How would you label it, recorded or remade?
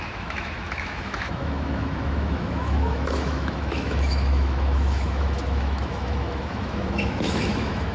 remade